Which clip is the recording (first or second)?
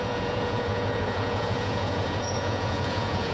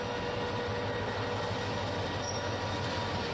second